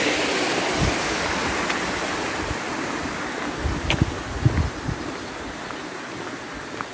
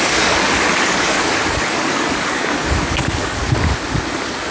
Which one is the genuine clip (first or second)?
first